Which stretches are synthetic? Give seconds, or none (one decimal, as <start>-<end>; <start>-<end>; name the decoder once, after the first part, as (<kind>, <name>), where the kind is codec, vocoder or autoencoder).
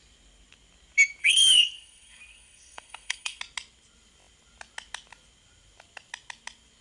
1.2-3.4 (codec, SNAC)